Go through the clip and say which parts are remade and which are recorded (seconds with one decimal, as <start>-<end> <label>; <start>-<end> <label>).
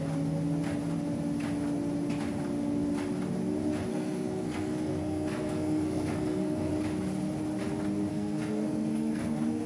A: 0.0-3.9 recorded; 3.9-6.7 remade; 6.7-8.1 recorded; 8.1-9.7 remade